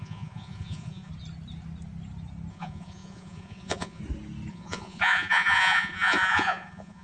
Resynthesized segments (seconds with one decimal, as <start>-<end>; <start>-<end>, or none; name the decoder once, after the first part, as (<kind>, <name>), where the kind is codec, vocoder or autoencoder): 0.0-1.1 (vocoder, Vocos); 2.5-4.0; 4.5-7.0